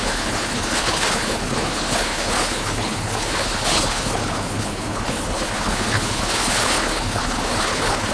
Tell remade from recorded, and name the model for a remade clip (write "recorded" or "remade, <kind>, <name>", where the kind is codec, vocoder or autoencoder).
remade, codec, HILCodec